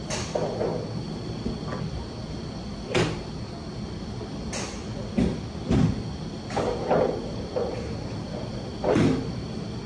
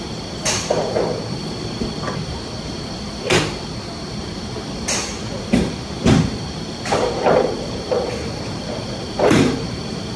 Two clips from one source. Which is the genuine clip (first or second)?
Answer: first